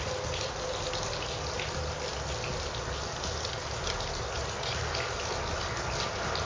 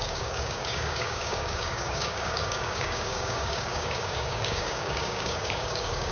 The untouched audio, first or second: first